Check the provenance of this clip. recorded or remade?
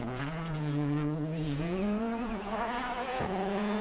remade